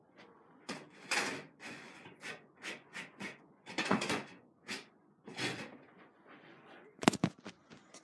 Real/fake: fake